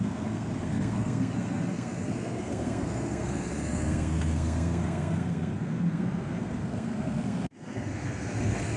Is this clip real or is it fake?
fake